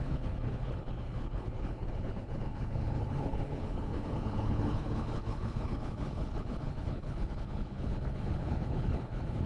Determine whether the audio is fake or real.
fake